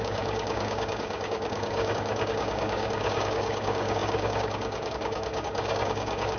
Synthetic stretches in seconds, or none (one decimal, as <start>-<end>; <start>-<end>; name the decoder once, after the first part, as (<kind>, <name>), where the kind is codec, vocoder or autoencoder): 0.0-6.4 (codec, DAC)